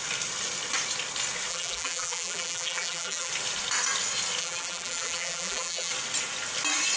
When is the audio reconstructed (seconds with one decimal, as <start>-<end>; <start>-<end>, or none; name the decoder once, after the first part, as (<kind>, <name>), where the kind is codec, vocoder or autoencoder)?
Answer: 1.5-3.3 (vocoder, BigVGAN v2); 4.4-5.9